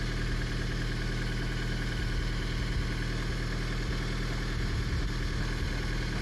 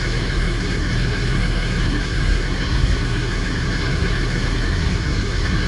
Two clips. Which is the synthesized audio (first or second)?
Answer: second